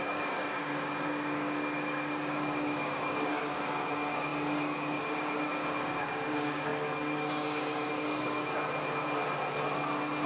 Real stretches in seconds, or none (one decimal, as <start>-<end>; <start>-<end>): 8.6-10.3